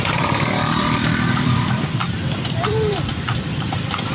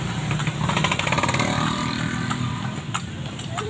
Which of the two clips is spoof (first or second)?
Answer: first